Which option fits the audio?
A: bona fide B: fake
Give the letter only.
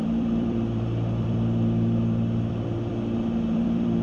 B